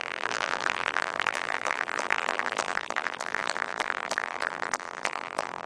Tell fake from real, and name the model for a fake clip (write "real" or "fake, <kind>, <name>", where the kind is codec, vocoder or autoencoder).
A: fake, vocoder, BigVGAN v2